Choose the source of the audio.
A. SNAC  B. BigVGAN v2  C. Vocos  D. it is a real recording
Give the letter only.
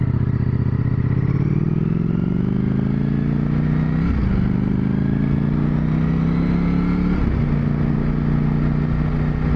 D